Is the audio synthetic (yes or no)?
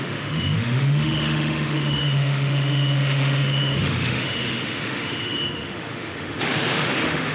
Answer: yes